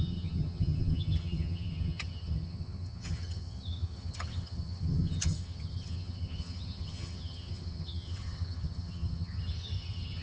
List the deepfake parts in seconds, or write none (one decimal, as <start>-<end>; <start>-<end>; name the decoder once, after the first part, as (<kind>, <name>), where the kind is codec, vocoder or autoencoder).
0.0-10.2 (vocoder, HiFi-GAN)